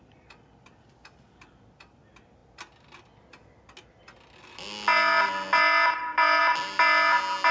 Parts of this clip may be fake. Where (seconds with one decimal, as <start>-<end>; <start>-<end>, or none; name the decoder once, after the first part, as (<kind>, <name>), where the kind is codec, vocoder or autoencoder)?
none